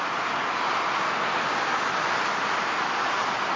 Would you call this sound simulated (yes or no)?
no